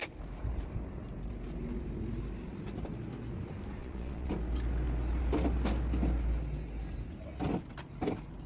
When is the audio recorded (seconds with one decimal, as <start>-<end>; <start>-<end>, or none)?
0.0-3.8; 4.3-8.5

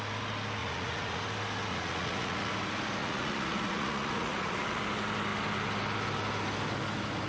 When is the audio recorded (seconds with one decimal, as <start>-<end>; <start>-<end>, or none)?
0.0-0.6; 1.2-1.7; 2.5-3.0; 4.8-7.3

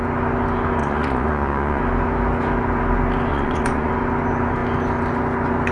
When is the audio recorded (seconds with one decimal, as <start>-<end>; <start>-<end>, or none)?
0.0-0.8; 1.8-3.3; 3.9-5.7

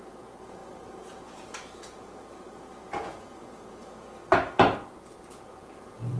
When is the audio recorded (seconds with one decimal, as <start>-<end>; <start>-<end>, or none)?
4.2-5.3